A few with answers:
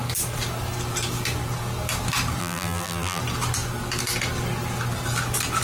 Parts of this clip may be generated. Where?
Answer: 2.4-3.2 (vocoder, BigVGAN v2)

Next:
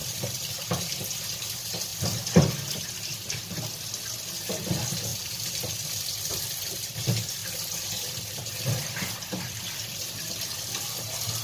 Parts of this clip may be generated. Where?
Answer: 0.0-0.7 (vocoder, BigVGAN v2); 5.1-5.6; 7.4-10.4

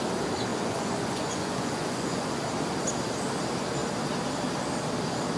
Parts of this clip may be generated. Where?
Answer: 0.5-2.4 (vocoder, Vocos)